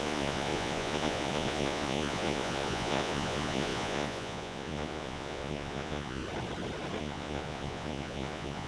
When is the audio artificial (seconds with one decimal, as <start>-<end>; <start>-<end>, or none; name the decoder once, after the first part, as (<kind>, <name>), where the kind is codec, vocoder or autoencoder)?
0.0-6.2 (vocoder, Vocos); 7.0-8.7